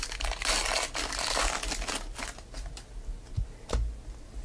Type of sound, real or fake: real